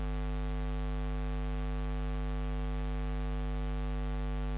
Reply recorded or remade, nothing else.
recorded